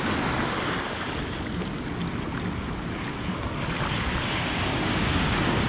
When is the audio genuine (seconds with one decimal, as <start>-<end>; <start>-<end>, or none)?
0.0-4.7

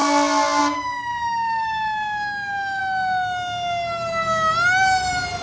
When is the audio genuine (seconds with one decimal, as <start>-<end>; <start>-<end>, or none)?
0.0-1.1; 2.8-5.4

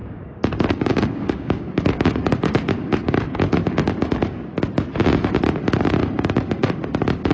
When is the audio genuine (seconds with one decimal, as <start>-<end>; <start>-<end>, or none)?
4.4-6.0

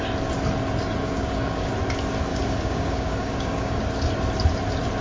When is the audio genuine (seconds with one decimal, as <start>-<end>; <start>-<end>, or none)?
0.0-1.0; 1.7-2.3; 3.8-5.0

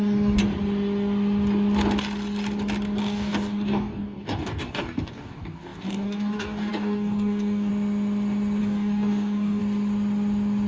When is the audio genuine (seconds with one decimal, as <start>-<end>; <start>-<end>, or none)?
0.4-3.0; 7.7-8.6; 9.6-10.7